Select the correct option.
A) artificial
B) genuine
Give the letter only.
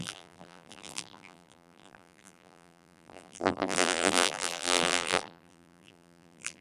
A